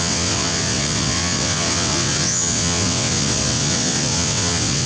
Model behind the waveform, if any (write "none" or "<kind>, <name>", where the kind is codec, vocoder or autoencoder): vocoder, WaveNeXt